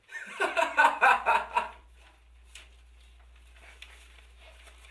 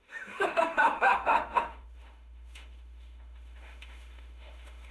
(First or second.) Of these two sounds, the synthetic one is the second